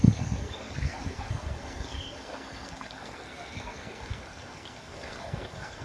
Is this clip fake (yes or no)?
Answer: yes